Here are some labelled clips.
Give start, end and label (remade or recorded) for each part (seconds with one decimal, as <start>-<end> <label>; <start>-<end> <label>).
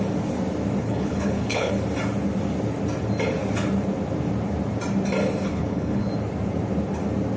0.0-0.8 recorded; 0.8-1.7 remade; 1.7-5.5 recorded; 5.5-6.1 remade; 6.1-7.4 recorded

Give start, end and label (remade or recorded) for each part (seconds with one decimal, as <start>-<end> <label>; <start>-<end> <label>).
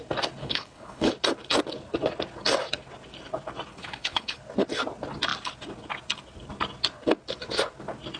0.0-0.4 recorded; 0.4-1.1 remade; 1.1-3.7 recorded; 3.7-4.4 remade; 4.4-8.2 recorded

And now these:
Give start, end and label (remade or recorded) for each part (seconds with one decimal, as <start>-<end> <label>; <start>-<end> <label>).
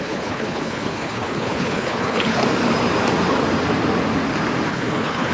0.0-2.4 remade; 2.4-4.7 recorded; 4.7-5.3 remade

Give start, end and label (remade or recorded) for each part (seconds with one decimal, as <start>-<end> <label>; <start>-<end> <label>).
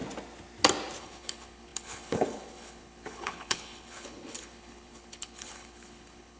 0.0-1.0 recorded; 1.0-6.4 remade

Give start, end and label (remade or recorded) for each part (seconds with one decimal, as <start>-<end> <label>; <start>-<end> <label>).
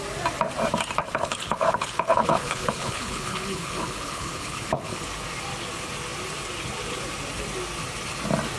0.0-1.0 recorded; 1.0-5.0 remade; 5.0-8.6 recorded